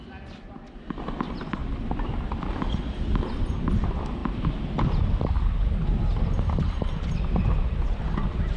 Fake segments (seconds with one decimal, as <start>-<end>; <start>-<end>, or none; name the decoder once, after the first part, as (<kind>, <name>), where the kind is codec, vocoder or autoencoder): none